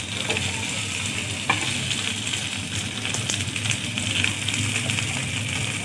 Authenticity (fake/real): real